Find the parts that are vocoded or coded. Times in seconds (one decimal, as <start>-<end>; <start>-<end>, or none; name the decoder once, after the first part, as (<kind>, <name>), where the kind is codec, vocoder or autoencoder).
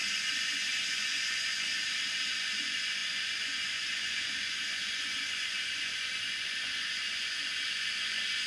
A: 0.0-1.7 (vocoder, Vocos); 2.3-8.5